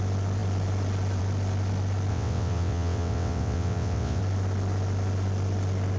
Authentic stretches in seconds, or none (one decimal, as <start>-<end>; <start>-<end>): 0.0-2.1; 4.2-6.0